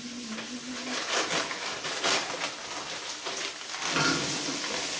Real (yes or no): yes